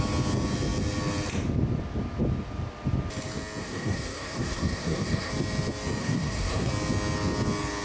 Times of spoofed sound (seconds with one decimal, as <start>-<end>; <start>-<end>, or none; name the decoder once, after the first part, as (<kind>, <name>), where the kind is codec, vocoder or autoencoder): 3.6-5.3 (codec, SNAC); 6.0-6.7